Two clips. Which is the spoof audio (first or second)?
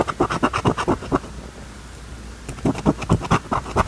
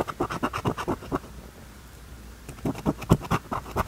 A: second